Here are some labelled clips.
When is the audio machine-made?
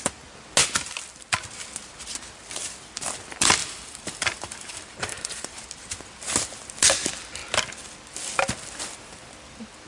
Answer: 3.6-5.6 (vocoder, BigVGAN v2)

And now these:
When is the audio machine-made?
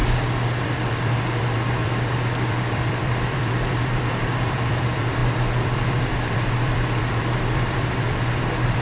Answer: 0.6-8.8 (vocoder, BigVGAN v2)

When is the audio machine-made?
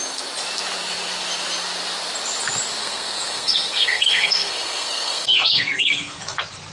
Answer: 2.8-6.2 (codec, SNAC)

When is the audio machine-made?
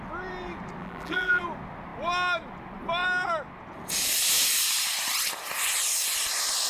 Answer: 0.8-1.4 (vocoder, BigVGAN v2)